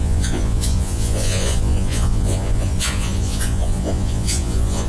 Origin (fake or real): fake